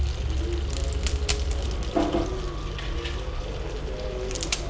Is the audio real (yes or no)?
yes